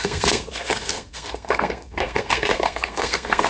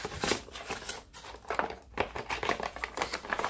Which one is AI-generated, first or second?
first